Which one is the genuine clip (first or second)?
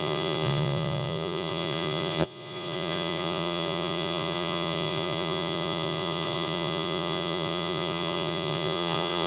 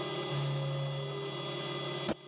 second